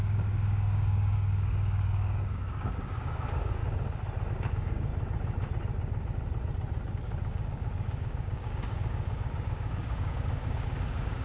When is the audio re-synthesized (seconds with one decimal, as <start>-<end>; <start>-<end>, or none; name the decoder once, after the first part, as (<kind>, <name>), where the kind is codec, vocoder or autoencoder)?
0.0-3.6 (codec, DAC); 4.3-4.9; 6.9-11.2